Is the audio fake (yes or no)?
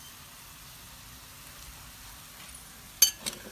no